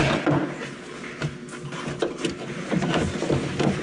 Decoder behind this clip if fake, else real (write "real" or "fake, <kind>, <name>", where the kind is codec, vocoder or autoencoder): real